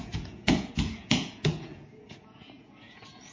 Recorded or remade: remade